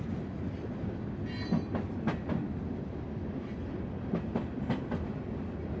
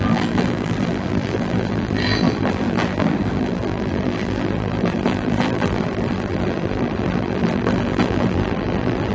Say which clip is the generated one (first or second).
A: second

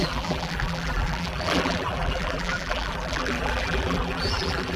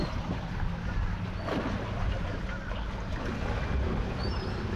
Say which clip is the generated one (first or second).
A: first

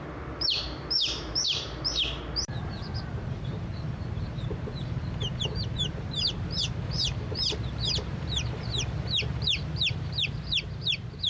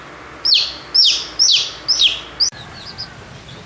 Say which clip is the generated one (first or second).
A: first